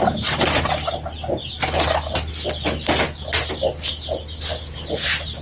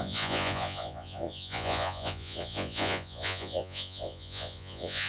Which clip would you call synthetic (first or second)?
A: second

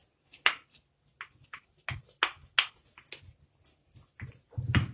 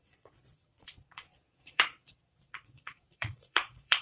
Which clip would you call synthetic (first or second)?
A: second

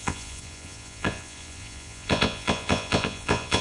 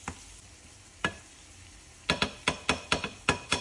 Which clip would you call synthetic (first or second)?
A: first